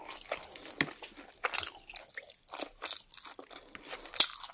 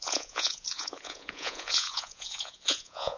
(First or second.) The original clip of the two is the first